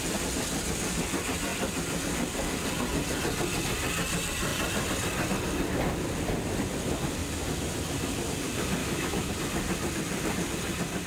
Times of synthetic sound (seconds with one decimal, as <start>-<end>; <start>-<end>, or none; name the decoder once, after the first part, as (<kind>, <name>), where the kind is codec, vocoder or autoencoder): 8.8-9.3 (autoencoder, DAC-VAE)